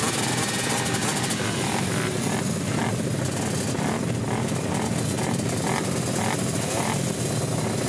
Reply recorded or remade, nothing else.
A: recorded